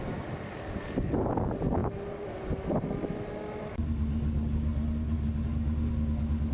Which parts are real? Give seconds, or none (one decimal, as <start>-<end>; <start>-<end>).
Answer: 0.0-6.5